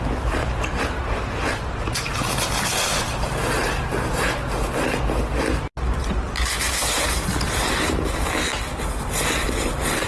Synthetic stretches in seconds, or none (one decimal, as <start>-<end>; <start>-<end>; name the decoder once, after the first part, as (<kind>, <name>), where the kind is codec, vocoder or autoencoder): 0.4-2.3 (vocoder, BigVGAN v2); 3.6-4.7